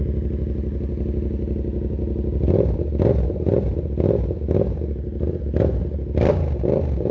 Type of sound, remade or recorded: recorded